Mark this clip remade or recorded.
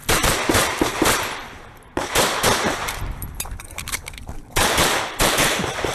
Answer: remade